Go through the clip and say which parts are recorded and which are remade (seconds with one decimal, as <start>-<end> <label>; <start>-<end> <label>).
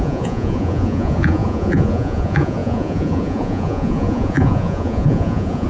0.0-5.7 remade